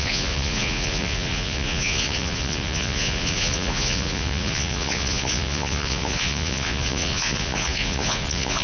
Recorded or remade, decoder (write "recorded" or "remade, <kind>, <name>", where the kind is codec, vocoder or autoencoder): remade, vocoder, Vocos